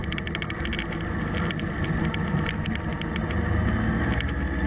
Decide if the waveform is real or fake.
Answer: real